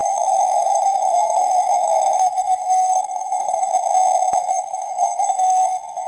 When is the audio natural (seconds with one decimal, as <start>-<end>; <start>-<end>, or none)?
3.7-4.4

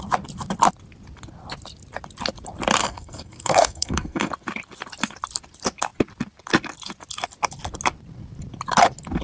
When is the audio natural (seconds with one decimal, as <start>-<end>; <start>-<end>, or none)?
0.0-2.8; 4.3-9.2

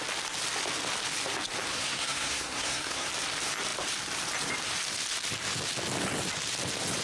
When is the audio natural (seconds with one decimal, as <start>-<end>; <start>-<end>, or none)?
0.0-1.7; 3.1-7.0